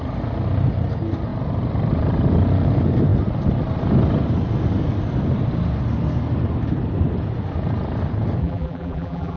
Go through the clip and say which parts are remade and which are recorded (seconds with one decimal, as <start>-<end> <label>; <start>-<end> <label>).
0.0-8.4 recorded; 8.4-9.4 remade